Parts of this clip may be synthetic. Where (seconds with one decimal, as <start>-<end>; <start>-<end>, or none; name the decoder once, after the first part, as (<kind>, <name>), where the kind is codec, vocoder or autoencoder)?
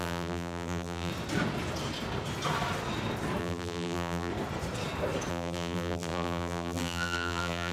0.0-1.1 (vocoder, BigVGAN v2); 3.4-4.3; 5.3-7.7